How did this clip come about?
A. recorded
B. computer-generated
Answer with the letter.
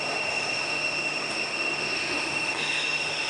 B